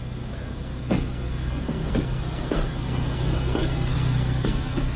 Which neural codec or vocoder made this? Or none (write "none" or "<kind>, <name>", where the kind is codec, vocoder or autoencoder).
codec, SNAC